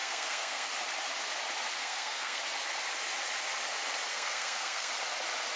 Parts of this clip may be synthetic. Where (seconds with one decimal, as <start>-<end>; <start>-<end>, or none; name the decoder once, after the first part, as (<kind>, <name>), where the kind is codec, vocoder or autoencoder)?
0.0-0.7 (codec, SNAC); 1.8-2.4; 4.1-4.9